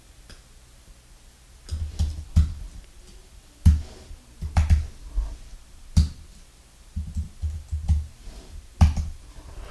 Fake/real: real